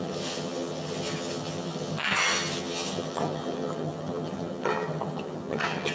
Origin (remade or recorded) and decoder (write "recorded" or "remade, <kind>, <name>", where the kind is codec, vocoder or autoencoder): remade, vocoder, HiFi-GAN